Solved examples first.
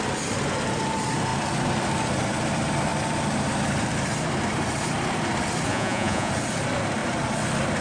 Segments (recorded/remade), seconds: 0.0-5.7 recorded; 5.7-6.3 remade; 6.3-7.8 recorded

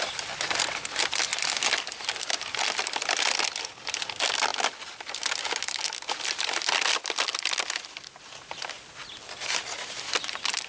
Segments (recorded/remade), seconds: 0.0-10.7 recorded